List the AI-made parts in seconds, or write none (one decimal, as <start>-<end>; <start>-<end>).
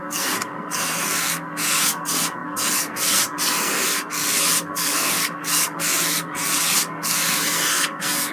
0.0-8.3